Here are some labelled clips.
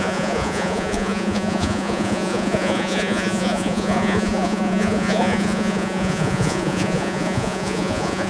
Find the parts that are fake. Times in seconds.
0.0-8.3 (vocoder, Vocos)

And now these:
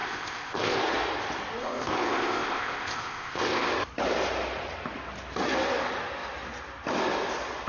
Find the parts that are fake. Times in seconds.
0.0-0.8 (codec, ZipCodec); 1.6-3.7

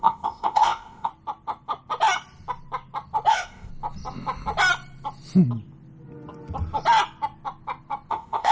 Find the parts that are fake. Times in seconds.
0.0-1.1 (codec, ZipCodec); 3.3-3.7; 8.1-8.5

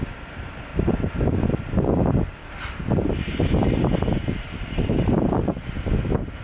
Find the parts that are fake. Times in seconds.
2.4-5.5 (vocoder, BigVGAN v2)

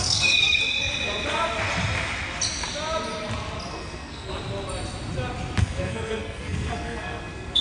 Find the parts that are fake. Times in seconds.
0.0-0.6 (codec, SNAC); 3.7-4.3; 5.6-7.6

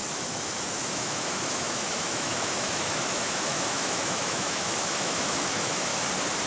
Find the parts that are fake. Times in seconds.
0.0-5.9 (autoencoder, DAC-VAE)